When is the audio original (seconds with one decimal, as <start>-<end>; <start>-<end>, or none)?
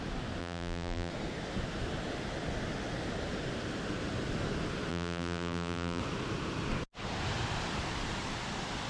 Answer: 0.0-0.4; 1.1-4.9; 6.0-8.9